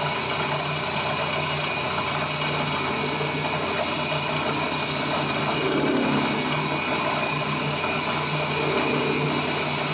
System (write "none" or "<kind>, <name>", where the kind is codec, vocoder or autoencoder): none